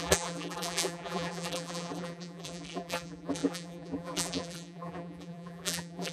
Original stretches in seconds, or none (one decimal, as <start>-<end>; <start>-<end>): none